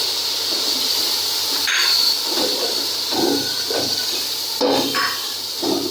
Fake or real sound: real